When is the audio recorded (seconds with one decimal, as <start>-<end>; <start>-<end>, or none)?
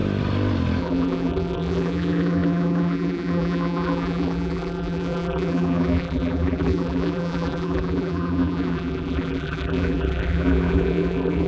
0.0-0.8